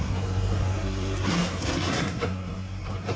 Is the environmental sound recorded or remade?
remade